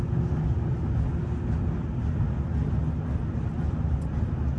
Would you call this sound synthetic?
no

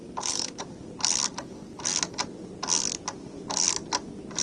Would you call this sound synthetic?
no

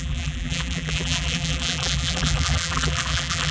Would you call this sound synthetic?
yes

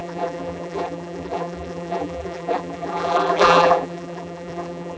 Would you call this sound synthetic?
yes